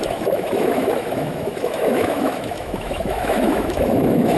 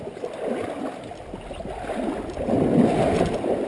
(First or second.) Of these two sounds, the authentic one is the second